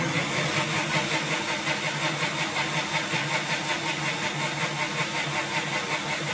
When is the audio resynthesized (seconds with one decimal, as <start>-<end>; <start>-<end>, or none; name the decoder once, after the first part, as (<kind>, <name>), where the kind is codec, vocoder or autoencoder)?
none